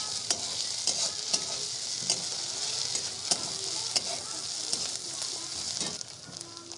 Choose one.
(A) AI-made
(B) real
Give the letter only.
B